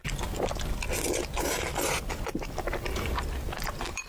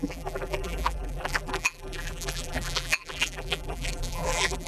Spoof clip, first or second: second